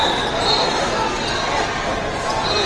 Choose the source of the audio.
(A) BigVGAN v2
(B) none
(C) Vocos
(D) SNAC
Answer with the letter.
B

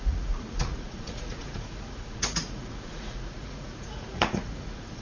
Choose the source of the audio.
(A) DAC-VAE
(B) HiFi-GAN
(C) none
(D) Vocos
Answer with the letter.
D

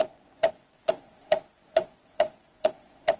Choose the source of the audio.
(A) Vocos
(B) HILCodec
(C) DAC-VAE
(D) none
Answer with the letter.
A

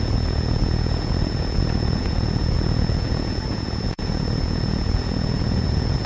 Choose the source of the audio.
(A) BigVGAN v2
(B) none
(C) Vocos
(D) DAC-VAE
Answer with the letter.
C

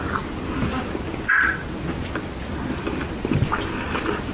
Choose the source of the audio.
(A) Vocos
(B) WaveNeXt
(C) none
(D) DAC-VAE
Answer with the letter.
C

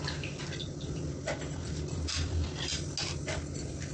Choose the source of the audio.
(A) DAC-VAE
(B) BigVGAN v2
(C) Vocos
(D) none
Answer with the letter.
D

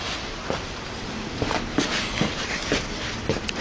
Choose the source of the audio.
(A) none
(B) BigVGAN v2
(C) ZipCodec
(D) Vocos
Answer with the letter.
A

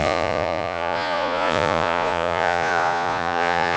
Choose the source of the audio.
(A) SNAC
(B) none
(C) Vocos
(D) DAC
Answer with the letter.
C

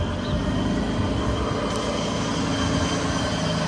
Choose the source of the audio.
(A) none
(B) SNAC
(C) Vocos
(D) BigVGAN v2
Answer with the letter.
A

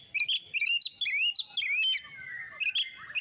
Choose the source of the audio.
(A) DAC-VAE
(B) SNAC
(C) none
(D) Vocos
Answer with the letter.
C